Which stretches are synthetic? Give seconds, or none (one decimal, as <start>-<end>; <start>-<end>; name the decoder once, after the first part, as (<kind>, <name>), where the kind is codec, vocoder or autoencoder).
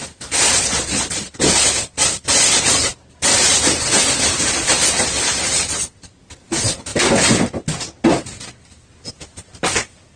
none